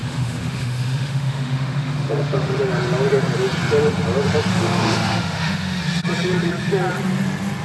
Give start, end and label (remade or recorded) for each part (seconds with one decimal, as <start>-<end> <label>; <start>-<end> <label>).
0.0-2.6 remade; 2.6-4.5 recorded; 4.5-5.8 remade; 5.8-7.6 recorded